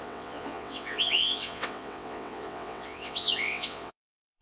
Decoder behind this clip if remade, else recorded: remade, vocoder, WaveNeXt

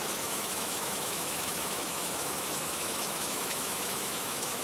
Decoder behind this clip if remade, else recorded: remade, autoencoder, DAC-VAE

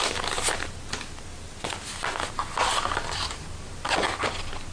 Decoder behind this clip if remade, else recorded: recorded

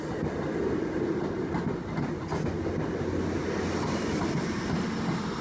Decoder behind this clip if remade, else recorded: recorded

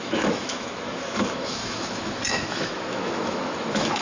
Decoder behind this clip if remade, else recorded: remade, autoencoder, DAC-VAE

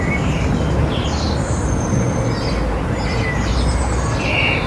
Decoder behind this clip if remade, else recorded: recorded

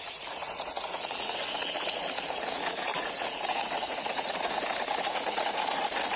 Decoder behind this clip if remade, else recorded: remade, vocoder, Vocos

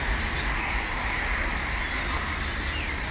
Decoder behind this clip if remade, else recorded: recorded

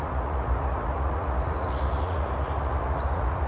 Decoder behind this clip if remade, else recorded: remade, vocoder, Vocos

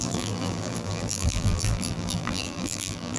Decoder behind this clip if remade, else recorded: remade, vocoder, BigVGAN v2